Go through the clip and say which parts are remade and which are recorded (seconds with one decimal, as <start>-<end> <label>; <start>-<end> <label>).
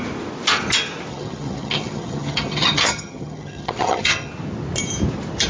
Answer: 0.0-1.1 recorded; 1.1-4.3 remade; 4.3-5.5 recorded